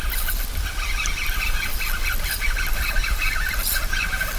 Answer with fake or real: real